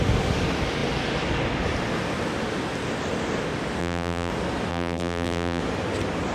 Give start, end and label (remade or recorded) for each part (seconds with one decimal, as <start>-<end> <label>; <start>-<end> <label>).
0.0-3.8 recorded; 3.8-4.3 remade; 4.3-4.7 recorded; 4.7-5.6 remade; 5.6-6.3 recorded